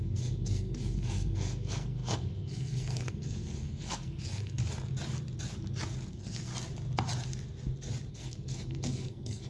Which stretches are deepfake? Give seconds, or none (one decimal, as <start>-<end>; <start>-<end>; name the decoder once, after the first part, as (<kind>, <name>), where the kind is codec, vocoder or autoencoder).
0.0-4.6 (codec, SNAC); 6.1-6.5; 8.1-9.5